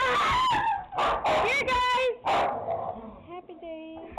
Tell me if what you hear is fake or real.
real